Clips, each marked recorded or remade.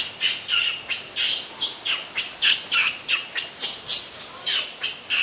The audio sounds recorded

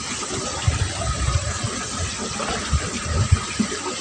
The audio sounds recorded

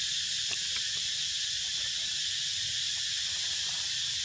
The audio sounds recorded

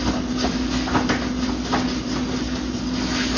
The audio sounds recorded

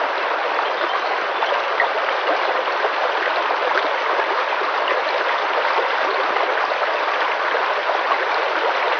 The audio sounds recorded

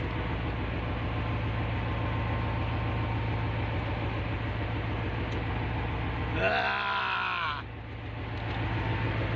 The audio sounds recorded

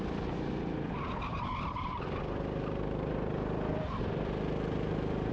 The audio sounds recorded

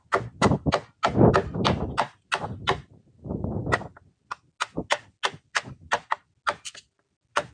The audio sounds recorded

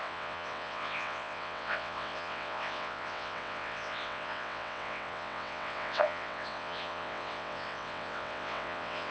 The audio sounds remade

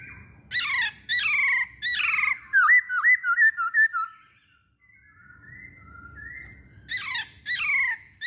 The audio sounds recorded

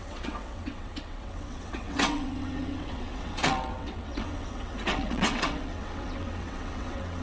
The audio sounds remade